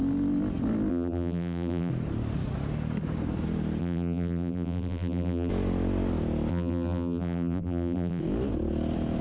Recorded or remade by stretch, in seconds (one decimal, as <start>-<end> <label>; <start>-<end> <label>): 0.0-0.9 recorded; 0.9-1.9 remade; 1.9-3.8 recorded; 3.8-5.5 remade; 5.5-6.5 recorded; 6.5-8.2 remade; 8.2-9.2 recorded